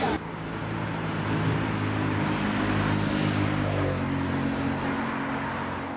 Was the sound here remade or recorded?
recorded